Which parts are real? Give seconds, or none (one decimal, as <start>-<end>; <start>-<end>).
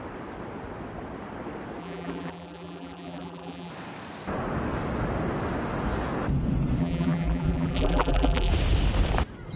0.0-1.8; 3.7-6.8; 8.5-9.6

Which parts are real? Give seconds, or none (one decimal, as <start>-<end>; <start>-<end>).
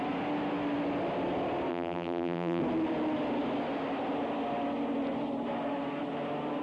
0.0-1.7; 2.6-6.6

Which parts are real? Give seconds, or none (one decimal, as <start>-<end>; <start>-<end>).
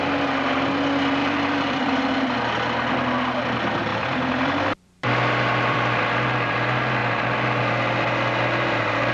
0.0-1.2; 2.1-3.9; 6.0-9.1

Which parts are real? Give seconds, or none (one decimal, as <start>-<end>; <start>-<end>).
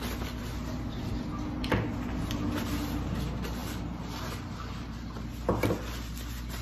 0.0-6.6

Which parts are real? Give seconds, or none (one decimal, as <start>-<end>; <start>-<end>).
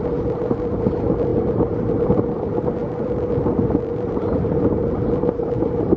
none